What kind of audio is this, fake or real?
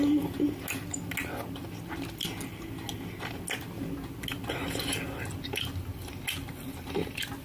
real